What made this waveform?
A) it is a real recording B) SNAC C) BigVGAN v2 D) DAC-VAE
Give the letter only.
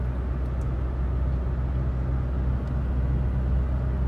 A